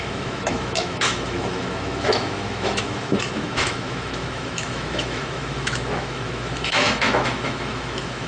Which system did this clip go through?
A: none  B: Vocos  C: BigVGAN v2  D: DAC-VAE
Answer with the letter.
D